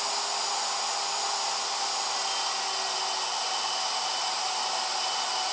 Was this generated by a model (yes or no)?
no